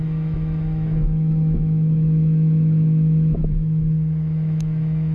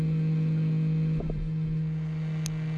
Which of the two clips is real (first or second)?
second